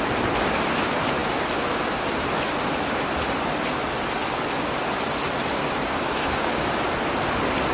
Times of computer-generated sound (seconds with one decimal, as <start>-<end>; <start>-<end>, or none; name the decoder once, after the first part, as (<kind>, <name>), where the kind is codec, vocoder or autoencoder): 5.6-6.7 (codec, DAC)